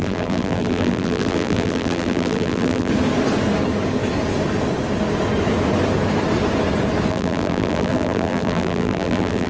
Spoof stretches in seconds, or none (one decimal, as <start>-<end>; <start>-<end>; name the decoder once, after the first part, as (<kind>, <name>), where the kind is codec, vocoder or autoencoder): 0.0-2.9 (vocoder, BigVGAN v2); 7.1-9.5